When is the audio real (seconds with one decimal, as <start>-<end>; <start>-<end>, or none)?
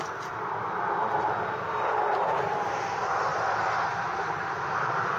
0.0-5.2